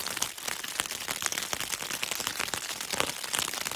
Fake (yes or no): no